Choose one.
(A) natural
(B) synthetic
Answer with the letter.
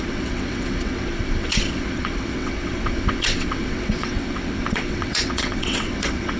B